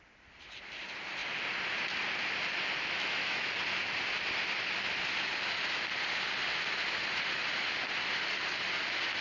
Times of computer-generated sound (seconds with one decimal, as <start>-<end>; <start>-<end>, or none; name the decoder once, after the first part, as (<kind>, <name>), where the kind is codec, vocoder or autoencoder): 3.0-3.5 (autoencoder, DAC-VAE)